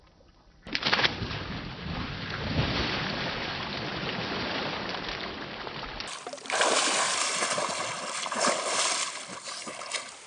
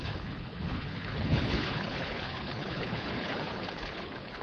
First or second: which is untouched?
first